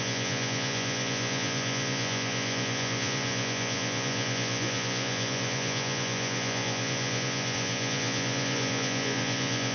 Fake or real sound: fake